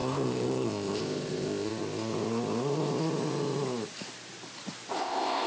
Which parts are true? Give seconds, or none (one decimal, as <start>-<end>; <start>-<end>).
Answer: 1.7-5.0

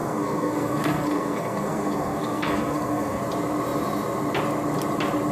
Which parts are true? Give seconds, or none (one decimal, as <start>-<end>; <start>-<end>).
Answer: 3.2-5.3

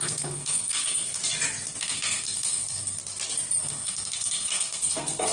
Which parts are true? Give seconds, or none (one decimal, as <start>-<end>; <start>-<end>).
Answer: 1.2-1.8; 3.0-3.6